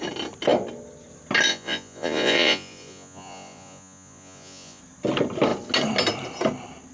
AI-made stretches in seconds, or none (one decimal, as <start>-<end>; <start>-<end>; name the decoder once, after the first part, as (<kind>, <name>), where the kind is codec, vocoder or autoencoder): 1.5-4.8 (vocoder, Vocos)